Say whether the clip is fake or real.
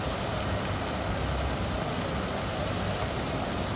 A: real